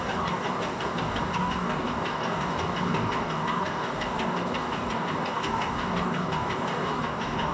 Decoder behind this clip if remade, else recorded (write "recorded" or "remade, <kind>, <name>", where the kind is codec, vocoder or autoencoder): remade, codec, DAC